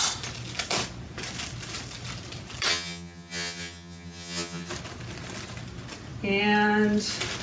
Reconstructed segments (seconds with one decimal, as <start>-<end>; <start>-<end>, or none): 2.7-4.7